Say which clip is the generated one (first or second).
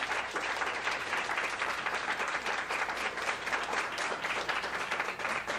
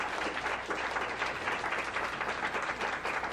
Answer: first